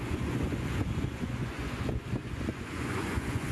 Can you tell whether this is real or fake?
fake